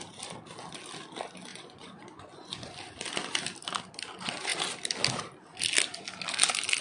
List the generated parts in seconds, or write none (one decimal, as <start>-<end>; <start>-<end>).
1.5-2.7